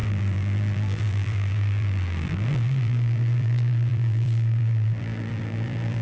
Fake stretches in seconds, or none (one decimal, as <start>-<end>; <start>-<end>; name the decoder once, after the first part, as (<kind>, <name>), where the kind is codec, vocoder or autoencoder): 0.0-6.0 (vocoder, BigVGAN v2)